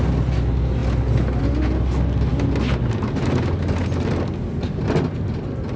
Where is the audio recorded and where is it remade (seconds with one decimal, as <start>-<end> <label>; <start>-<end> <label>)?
0.0-5.8 recorded